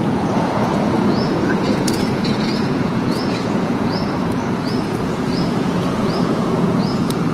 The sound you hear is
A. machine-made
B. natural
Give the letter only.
A